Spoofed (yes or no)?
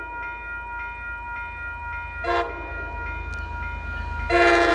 no